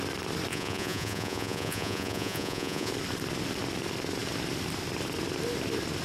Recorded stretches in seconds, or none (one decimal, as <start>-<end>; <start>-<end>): 0.0-0.5; 2.9-6.0